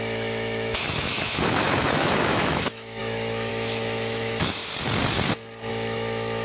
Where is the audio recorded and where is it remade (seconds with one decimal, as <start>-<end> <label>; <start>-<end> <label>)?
0.0-4.6 remade; 4.6-5.7 recorded; 5.7-6.4 remade